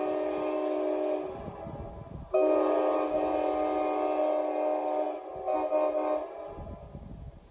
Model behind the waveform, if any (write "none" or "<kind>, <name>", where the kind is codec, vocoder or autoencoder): none